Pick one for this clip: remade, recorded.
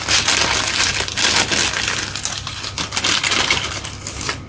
recorded